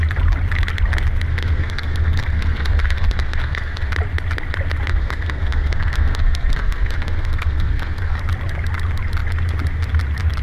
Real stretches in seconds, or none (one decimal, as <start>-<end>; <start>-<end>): 0.0-1.3; 3.9-4.9; 8.2-10.4